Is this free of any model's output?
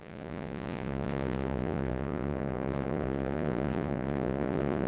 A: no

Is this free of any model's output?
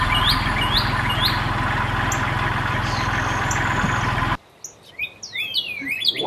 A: yes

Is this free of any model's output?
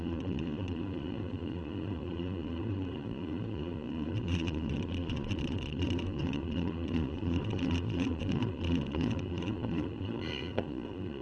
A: no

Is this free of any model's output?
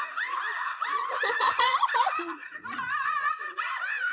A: no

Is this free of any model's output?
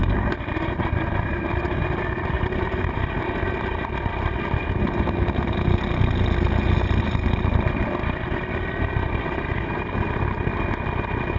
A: yes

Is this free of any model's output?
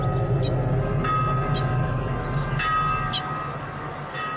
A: yes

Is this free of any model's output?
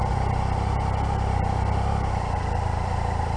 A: yes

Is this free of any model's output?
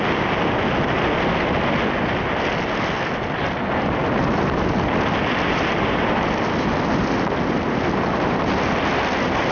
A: yes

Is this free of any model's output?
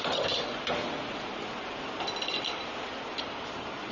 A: yes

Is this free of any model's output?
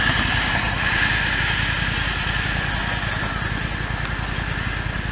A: yes